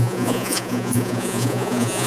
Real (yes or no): no